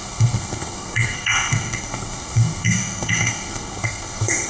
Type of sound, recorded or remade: remade